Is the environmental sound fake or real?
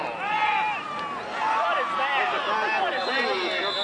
real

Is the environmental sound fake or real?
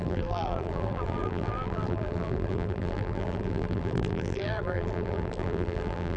fake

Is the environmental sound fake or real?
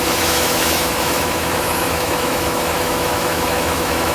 fake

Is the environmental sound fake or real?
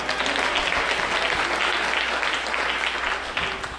real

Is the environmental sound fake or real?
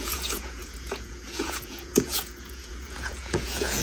fake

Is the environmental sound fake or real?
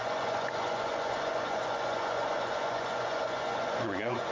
fake